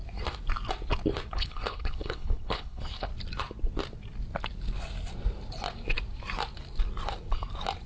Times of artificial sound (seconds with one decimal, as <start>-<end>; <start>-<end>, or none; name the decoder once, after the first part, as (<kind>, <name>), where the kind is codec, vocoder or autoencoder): 1.3-3.1 (codec, HILCodec)